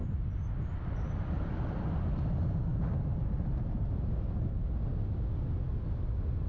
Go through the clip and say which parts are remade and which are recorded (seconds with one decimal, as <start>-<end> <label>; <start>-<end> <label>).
0.0-6.5 recorded